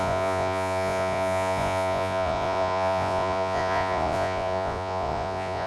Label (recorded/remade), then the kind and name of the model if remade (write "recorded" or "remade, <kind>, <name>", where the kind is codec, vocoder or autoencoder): remade, vocoder, Vocos